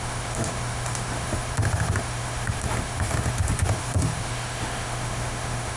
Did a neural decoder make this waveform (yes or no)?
yes